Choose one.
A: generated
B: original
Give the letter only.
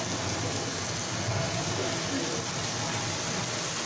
B